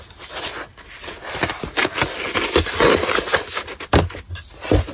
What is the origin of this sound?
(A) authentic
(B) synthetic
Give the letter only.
A